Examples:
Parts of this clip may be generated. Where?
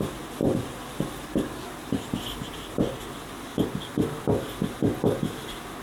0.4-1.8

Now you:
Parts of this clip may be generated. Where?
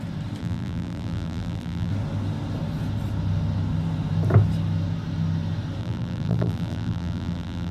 0.4-1.9; 5.8-7.7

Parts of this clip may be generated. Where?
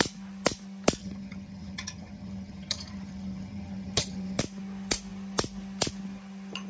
1.0-4.4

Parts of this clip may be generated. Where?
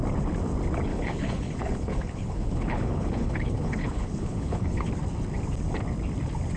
0.9-4.9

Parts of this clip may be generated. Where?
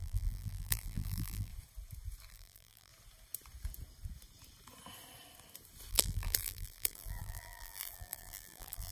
0.0-1.5; 2.3-2.9; 5.9-8.9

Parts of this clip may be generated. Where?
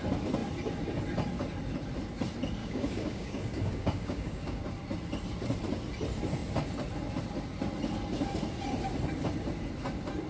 2.6-4.6